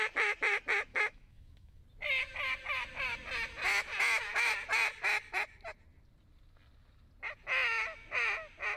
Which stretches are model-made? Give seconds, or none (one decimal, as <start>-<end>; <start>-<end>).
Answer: 0.9-1.8